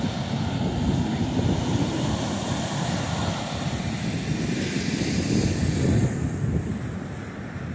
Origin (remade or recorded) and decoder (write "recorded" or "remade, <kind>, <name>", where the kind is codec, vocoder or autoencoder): recorded